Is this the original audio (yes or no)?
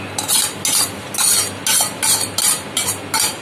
yes